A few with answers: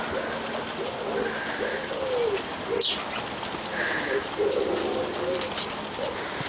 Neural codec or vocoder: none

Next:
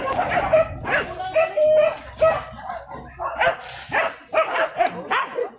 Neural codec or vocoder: none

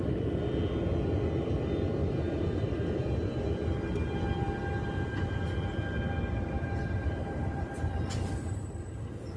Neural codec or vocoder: none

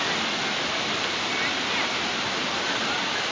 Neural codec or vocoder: none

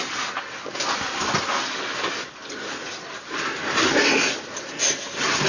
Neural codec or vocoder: none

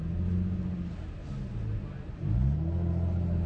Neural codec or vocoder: none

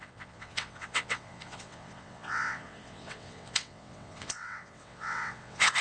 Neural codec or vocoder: vocoder, WaveNeXt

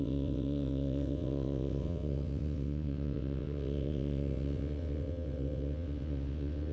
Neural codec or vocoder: vocoder, WaveNeXt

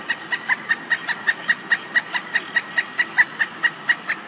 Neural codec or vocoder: none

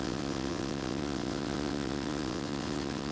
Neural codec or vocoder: vocoder, WaveNeXt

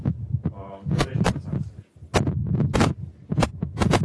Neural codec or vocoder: none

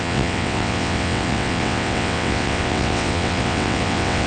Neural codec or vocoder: vocoder, WaveNeXt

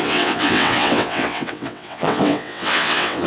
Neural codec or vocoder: vocoder, WaveNeXt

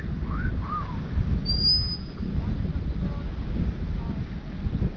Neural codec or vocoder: none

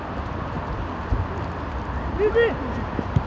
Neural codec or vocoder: none